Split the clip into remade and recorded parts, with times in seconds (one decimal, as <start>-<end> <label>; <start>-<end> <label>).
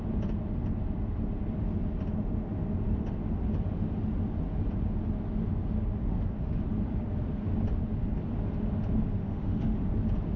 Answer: 0.0-6.0 recorded; 6.0-6.6 remade; 6.6-9.2 recorded; 9.2-9.8 remade; 9.8-10.4 recorded